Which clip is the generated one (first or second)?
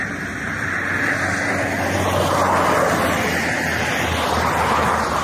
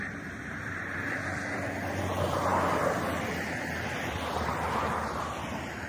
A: second